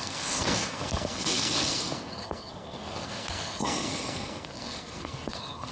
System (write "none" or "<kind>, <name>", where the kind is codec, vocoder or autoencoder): codec, SNAC